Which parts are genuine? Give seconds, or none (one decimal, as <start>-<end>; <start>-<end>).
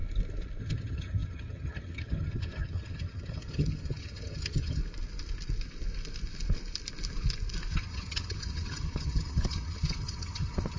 0.0-0.6; 4.8-7.7